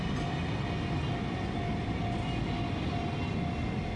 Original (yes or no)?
yes